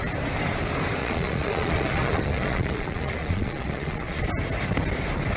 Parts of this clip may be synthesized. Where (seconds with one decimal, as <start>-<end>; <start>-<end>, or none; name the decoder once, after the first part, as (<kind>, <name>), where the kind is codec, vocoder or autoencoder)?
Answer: 1.0-4.2 (vocoder, Vocos)